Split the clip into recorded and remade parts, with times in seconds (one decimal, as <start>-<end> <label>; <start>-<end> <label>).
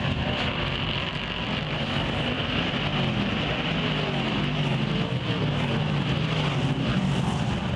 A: 0.0-2.9 remade; 2.9-5.5 recorded; 5.5-7.8 remade